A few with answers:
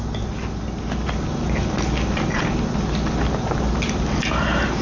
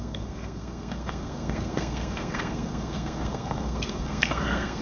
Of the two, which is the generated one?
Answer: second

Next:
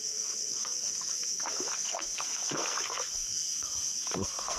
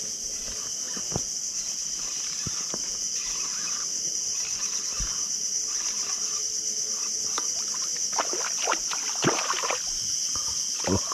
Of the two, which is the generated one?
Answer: first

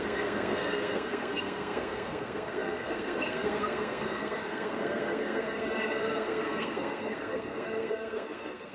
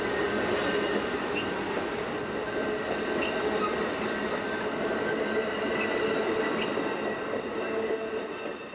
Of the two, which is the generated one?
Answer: first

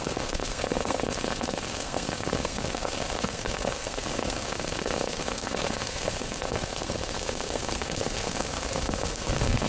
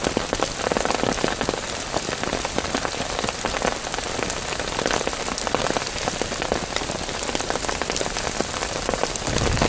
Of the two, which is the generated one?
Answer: first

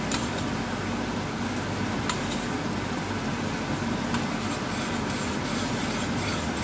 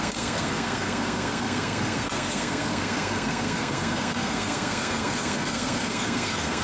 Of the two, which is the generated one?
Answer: second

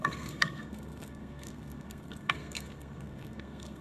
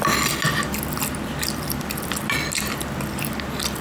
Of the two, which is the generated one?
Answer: first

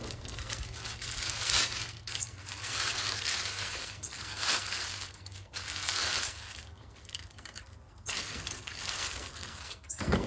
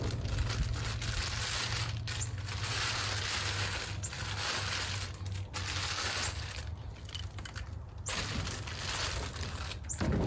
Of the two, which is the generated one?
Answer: first